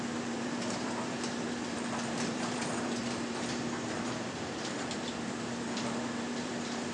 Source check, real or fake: fake